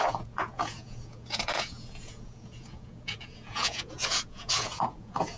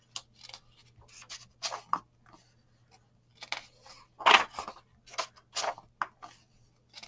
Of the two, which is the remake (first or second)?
first